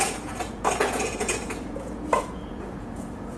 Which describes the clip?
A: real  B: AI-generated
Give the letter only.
B